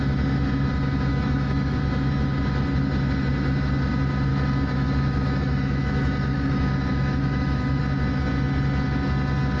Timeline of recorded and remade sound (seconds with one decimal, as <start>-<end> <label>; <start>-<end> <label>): 0.0-1.1 recorded; 1.1-1.8 remade; 1.8-4.3 recorded; 4.3-7.8 remade; 7.8-9.6 recorded